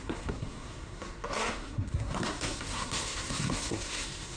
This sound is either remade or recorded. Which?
remade